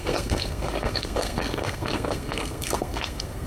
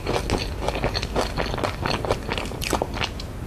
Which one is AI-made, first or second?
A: first